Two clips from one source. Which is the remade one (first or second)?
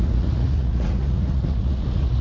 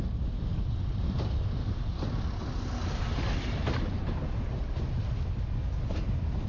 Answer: first